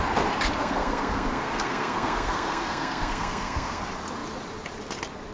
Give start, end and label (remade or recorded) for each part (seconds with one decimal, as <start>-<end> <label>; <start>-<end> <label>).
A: 0.0-0.6 recorded; 0.6-3.8 remade; 3.8-5.3 recorded